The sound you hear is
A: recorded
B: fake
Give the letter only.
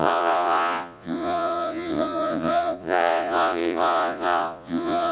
B